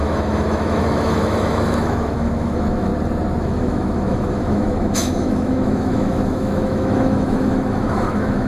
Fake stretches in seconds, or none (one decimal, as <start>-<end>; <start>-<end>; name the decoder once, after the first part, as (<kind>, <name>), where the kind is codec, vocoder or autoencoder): 0.0-2.9 (autoencoder, DAC-VAE); 3.4-8.5